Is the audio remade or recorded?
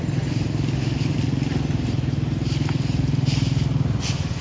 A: recorded